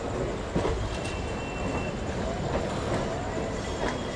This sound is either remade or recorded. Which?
recorded